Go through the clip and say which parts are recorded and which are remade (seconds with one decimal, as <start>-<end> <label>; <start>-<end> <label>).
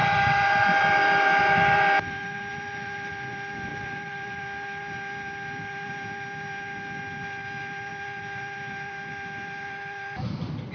0.0-3.1 remade; 3.1-3.7 recorded; 3.7-4.4 remade; 4.4-10.7 recorded